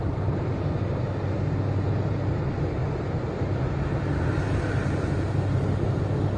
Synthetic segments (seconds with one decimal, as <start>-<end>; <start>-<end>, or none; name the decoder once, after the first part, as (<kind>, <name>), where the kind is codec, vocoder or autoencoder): none